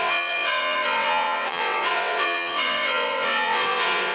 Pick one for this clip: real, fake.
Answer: fake